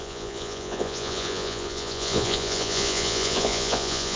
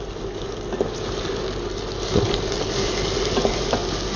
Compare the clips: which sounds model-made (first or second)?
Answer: first